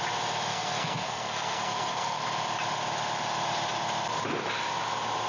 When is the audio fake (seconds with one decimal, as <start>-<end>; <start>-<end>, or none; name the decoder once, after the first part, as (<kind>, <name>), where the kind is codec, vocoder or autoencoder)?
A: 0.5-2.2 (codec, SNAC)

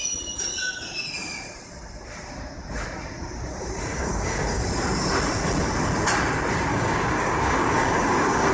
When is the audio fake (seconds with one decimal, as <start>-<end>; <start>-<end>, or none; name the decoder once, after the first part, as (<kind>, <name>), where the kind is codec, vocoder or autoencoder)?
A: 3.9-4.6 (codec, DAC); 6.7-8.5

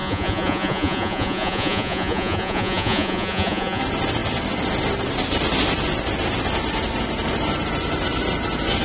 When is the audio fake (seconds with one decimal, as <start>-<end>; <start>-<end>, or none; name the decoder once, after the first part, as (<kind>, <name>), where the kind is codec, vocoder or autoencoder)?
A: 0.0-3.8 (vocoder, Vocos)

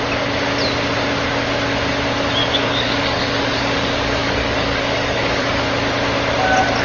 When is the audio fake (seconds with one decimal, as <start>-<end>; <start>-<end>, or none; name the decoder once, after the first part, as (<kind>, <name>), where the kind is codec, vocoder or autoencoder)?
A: 2.4-5.6 (codec, DAC)

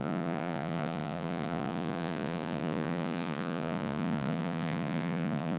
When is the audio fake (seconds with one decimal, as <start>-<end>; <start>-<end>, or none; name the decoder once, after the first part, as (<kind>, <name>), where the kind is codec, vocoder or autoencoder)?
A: 0.0-5.6 (vocoder, Vocos)